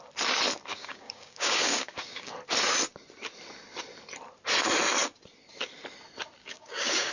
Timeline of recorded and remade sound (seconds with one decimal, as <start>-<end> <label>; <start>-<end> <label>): 0.0-0.7 recorded; 0.7-2.3 remade; 2.3-6.4 recorded; 6.4-7.1 remade